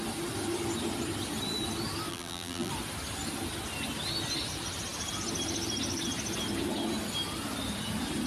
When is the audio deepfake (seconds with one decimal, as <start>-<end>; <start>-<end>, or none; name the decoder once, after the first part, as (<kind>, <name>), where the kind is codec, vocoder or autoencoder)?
2.1-2.7 (vocoder, BigVGAN v2)

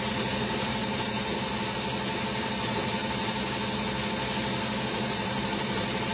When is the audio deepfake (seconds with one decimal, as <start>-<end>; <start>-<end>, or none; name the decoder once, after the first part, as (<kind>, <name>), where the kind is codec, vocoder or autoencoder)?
0.0-1.3 (vocoder, BigVGAN v2); 2.6-3.0; 4.9-6.1